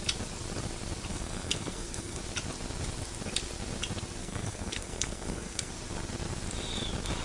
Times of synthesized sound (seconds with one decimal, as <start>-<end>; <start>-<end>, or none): 1.1-2.2; 4.2-5.7